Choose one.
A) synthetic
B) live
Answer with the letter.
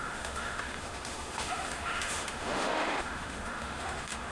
A